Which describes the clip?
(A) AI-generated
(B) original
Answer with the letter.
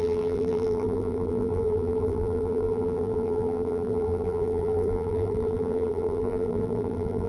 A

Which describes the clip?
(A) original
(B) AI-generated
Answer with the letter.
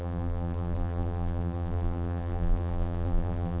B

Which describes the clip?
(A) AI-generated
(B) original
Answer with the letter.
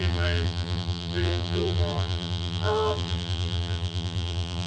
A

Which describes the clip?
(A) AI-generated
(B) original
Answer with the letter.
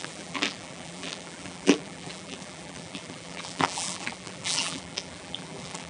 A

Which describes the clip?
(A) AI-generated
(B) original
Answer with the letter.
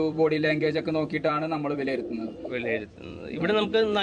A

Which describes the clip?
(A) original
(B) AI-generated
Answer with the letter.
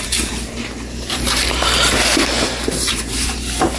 B